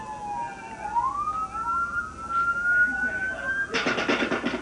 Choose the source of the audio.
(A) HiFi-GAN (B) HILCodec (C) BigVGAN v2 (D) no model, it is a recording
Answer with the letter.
D